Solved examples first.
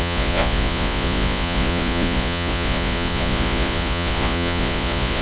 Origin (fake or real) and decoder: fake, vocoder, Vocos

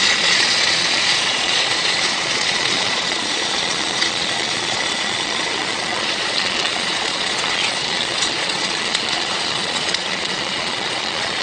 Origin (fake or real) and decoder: fake, vocoder, Vocos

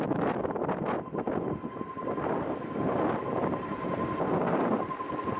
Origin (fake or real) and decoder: real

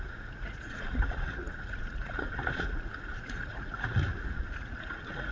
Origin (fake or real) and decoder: fake, vocoder, Vocos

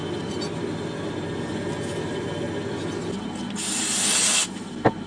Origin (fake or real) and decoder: real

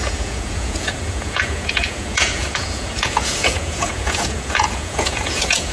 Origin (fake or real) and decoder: fake, vocoder, Vocos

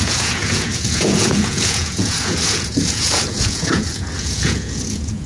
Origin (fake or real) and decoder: fake, vocoder, Vocos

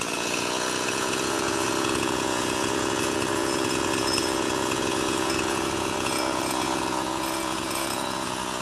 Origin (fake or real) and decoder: fake, vocoder, Vocos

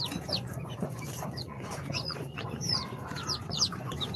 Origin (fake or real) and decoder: fake, vocoder, Vocos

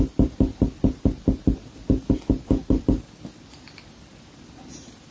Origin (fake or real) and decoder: real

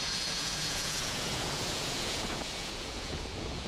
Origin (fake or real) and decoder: fake, vocoder, Vocos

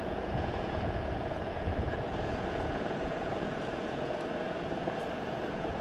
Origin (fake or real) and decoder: fake, vocoder, Vocos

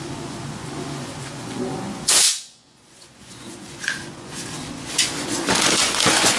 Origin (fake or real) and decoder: fake, vocoder, Vocos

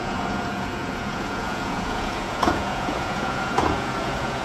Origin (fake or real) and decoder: fake, vocoder, Vocos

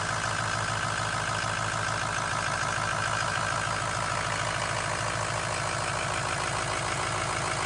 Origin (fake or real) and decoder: real